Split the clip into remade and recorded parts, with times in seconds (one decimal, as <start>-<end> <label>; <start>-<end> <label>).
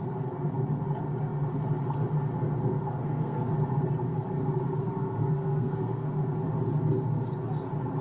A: 0.0-3.0 recorded; 3.0-3.5 remade; 3.5-4.8 recorded; 4.8-6.3 remade; 6.3-8.0 recorded